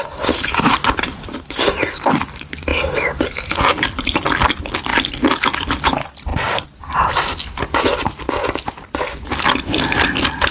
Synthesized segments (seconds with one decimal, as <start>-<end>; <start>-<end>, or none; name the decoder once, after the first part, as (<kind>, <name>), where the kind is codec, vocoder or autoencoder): none